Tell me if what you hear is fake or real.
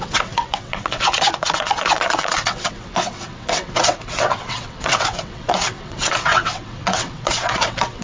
fake